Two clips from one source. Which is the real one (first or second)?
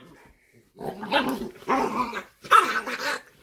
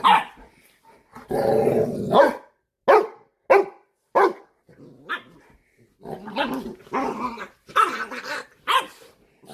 second